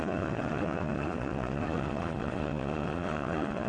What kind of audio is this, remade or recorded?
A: remade